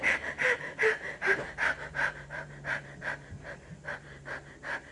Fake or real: fake